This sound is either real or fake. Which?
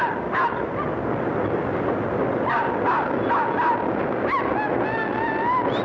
real